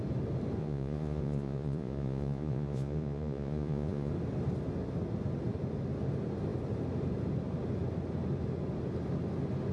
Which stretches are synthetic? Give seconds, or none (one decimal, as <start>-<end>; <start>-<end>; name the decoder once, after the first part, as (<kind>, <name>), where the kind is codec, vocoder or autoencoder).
0.6-4.1 (vocoder, Vocos)